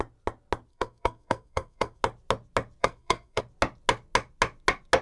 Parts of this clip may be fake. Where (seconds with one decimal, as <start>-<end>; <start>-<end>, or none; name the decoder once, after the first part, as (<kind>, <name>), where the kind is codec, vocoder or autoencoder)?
0.7-2.0 (codec, SNAC); 2.8-3.4